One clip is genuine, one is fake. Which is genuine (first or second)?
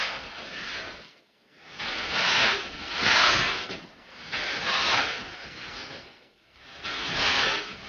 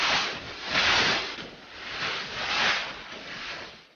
second